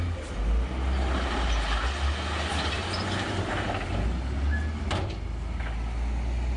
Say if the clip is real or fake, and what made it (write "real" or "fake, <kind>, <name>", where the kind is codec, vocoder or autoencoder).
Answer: real